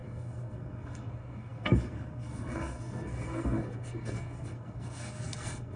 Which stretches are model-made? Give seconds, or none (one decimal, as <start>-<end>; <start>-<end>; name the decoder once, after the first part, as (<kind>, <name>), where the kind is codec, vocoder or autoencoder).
0.0-5.8 (codec, SNAC)